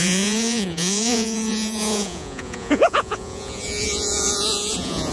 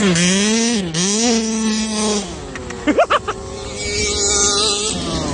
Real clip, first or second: second